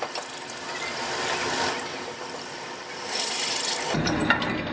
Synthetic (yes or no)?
no